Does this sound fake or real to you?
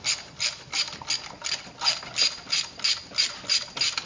real